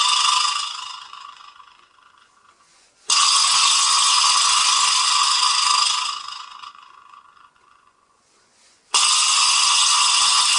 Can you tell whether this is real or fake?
fake